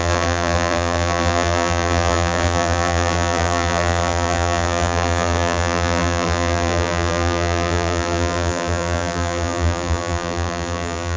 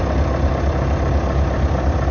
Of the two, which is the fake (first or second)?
first